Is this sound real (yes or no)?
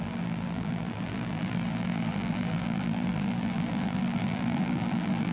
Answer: no